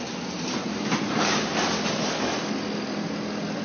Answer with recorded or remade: recorded